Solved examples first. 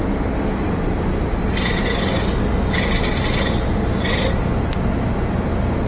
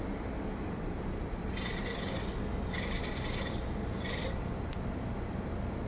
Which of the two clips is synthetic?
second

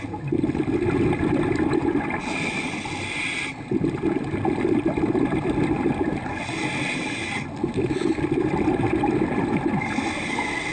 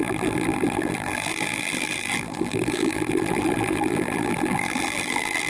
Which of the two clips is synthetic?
second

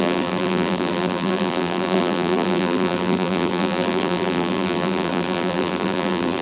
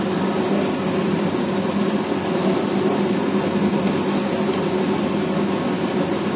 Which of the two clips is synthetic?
first